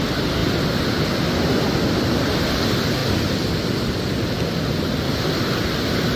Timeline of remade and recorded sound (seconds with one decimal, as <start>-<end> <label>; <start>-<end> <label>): 0.0-3.0 recorded; 3.0-4.3 remade; 4.3-6.2 recorded